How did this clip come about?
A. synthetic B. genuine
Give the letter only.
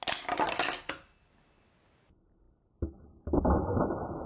B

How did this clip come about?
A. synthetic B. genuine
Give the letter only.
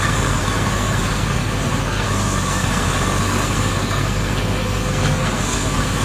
A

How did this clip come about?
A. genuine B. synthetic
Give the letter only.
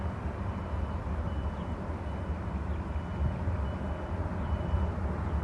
A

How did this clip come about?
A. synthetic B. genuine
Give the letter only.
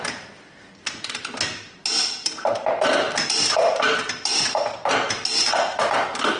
B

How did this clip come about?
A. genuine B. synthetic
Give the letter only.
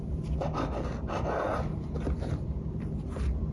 A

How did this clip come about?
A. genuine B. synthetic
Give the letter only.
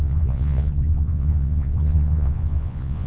B